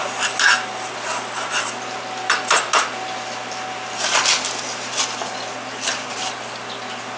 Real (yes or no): yes